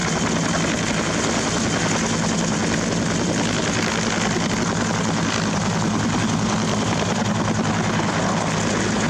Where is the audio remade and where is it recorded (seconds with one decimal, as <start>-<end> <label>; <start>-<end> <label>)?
0.0-9.1 recorded